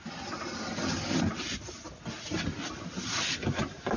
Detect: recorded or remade recorded